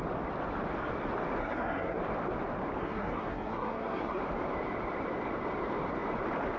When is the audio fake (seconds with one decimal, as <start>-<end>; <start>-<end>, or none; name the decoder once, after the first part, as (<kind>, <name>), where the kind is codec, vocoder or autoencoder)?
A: 1.4-2.0 (codec, SNAC); 2.8-4.2